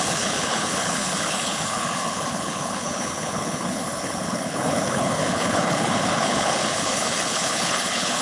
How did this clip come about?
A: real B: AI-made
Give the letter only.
B